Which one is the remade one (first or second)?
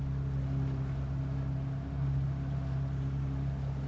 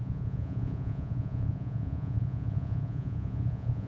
second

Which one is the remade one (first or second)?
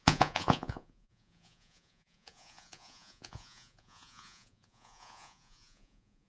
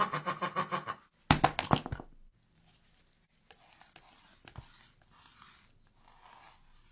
first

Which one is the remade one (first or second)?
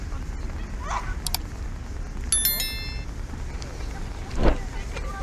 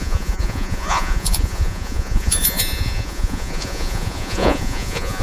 second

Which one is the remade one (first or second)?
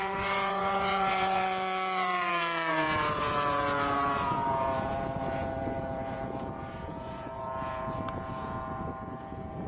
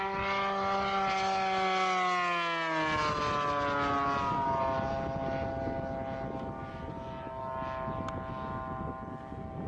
first